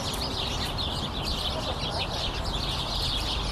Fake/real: real